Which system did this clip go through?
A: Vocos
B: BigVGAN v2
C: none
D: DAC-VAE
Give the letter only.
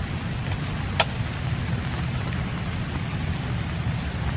C